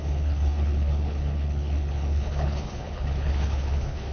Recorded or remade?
remade